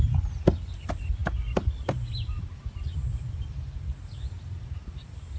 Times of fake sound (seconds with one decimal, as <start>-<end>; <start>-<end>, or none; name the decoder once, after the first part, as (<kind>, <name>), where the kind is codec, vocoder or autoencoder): none